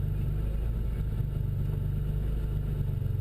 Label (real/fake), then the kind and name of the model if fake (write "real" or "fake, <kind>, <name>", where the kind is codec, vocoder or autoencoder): real